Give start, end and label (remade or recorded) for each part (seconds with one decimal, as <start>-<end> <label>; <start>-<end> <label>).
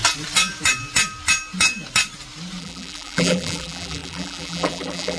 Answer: 0.0-2.6 recorded; 2.6-5.2 remade